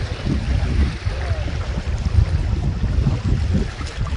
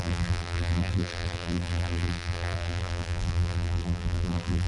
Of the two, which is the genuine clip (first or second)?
first